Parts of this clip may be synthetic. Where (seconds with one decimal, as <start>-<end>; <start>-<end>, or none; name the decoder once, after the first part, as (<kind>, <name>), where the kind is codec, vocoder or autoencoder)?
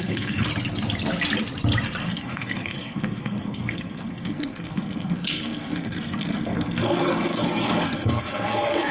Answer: 0.0-0.5 (codec, SNAC); 2.0-8.9